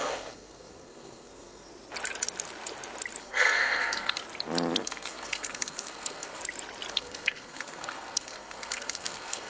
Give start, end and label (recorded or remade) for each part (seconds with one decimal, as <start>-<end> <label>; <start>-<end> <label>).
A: 0.0-1.7 remade; 1.7-3.2 recorded; 3.2-4.2 remade; 4.2-4.8 recorded; 4.8-6.4 remade; 6.4-6.9 recorded; 6.9-9.5 remade